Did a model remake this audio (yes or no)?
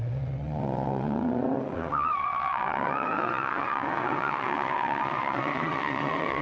yes